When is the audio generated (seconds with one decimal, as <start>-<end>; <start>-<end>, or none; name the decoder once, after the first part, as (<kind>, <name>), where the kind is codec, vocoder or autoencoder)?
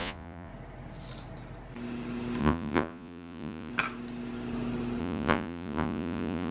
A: 0.0-0.5 (vocoder, Vocos); 2.4-3.7; 5.0-6.5